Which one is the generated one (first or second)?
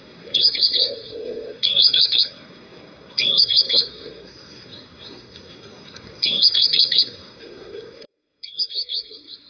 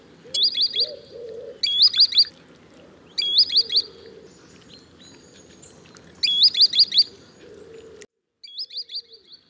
first